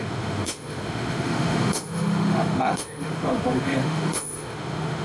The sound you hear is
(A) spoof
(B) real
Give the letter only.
A